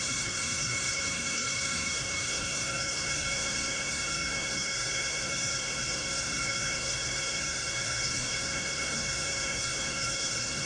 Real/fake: fake